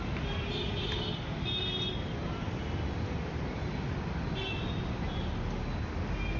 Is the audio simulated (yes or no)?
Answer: no